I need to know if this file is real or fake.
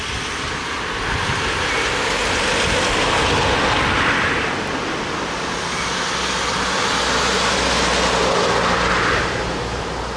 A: real